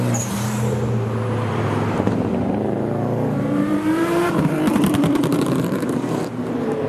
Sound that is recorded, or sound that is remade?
remade